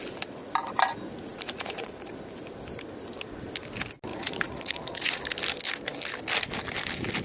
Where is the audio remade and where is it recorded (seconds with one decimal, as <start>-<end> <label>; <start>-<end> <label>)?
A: 0.0-1.3 recorded; 1.3-2.1 remade; 2.1-4.1 recorded; 4.1-5.2 remade; 5.2-7.2 recorded